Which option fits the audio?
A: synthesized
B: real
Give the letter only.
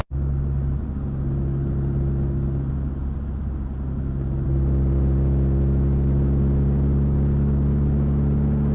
B